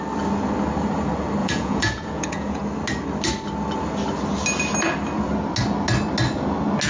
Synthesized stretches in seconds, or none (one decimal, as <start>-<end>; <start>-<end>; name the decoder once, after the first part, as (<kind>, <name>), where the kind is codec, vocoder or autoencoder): 1.4-2.6 (vocoder, Vocos)